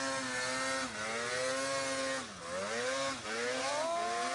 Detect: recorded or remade recorded